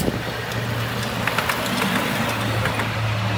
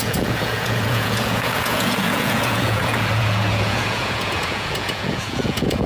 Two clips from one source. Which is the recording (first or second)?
first